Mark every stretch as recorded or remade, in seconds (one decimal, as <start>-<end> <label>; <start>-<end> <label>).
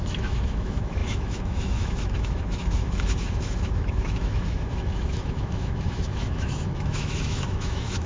0.0-8.1 remade